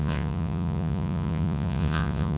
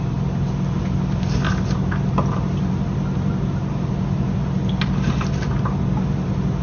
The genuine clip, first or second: second